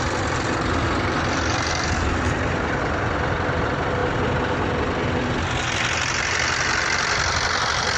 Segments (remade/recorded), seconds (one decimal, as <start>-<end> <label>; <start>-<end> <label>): 0.0-8.0 recorded